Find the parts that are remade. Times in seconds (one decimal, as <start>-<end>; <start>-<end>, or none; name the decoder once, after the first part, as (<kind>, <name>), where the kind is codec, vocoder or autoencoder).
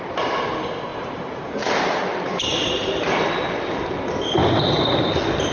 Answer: 0.9-2.7 (vocoder, BigVGAN v2); 4.4-5.1